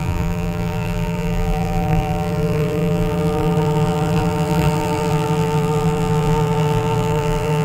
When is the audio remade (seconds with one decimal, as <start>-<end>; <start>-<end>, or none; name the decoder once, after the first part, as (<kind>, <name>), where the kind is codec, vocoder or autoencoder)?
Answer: 0.0-7.6 (vocoder, BigVGAN v2)